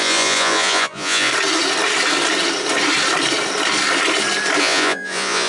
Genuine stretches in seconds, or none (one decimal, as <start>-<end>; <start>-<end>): 1.3-4.6